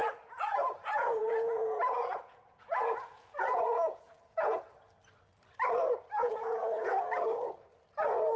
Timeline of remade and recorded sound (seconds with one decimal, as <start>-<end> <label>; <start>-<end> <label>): 0.0-4.6 remade; 4.6-6.2 recorded; 6.2-6.9 remade; 6.9-8.4 recorded